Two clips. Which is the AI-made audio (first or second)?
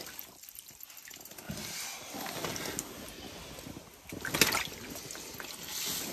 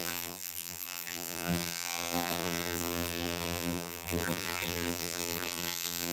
second